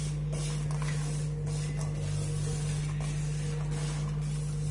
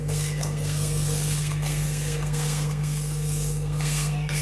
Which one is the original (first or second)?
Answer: first